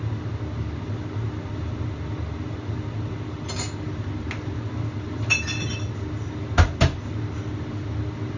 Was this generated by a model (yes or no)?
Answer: no